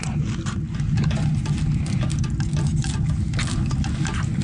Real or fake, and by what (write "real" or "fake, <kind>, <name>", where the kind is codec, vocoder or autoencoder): real